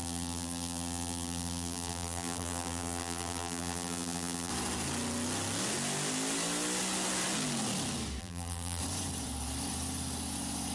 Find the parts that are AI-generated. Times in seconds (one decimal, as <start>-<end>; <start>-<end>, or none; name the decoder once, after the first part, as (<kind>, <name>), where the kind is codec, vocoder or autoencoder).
0.0-4.5 (vocoder, BigVGAN v2); 8.2-8.8